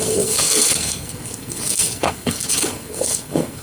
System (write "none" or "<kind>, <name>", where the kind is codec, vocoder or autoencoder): codec, SNAC